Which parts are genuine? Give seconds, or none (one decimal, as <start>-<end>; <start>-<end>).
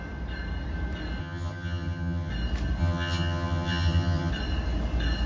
0.0-1.2; 2.3-2.8; 4.3-5.3